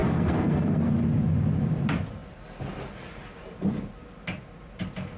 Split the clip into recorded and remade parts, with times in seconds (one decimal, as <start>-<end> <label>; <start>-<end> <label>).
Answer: 0.0-0.9 remade; 0.9-5.2 recorded